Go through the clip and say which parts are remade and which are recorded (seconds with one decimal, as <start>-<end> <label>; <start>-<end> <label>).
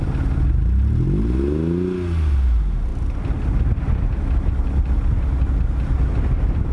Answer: 0.0-6.7 recorded